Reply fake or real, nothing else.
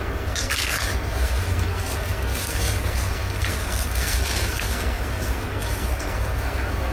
fake